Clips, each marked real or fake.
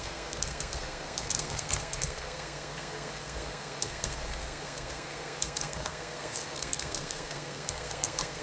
fake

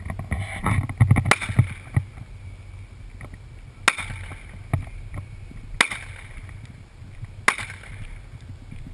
real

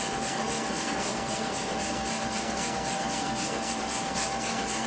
fake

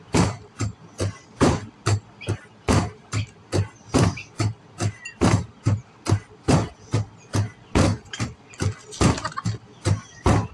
real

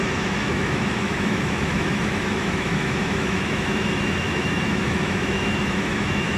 fake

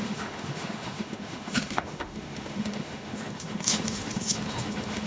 fake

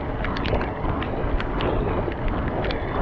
real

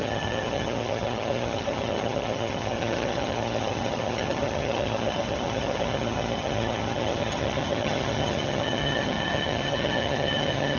fake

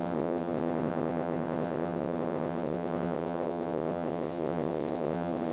fake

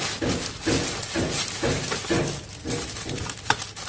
real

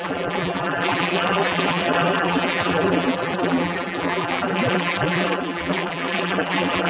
fake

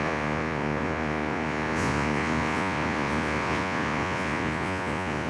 fake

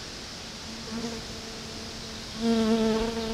real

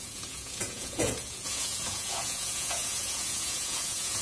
fake